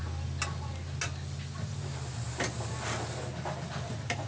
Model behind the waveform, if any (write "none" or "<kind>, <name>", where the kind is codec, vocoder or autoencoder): none